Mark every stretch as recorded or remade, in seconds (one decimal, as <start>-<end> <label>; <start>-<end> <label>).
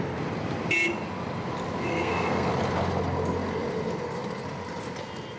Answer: 0.0-1.9 recorded; 1.9-2.5 remade; 2.5-5.4 recorded